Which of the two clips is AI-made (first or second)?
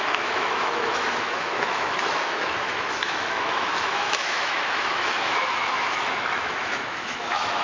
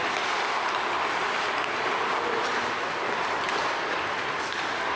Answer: first